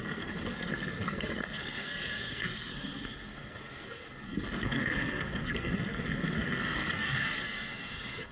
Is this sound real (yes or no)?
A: no